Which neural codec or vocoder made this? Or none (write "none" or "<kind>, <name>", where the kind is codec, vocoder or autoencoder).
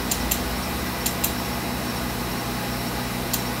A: none